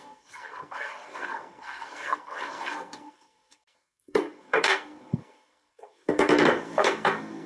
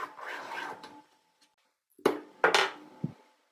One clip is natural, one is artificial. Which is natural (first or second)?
second